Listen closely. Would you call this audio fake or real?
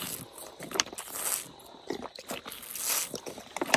real